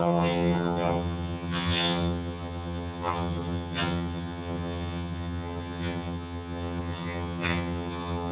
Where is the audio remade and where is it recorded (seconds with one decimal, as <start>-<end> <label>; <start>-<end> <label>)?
0.0-8.3 remade